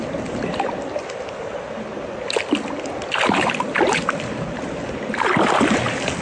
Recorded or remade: recorded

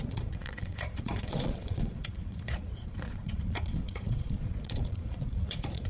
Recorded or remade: remade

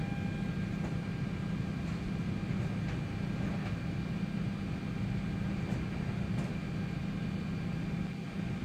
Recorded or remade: recorded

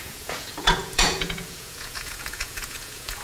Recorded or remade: remade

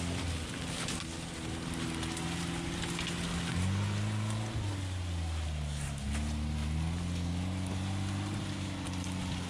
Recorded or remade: recorded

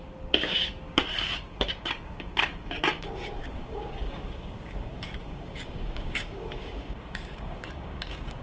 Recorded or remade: remade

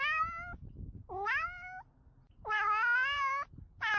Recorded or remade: recorded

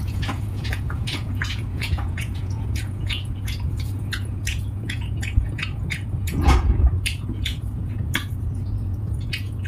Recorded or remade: remade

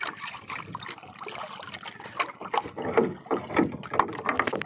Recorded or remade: recorded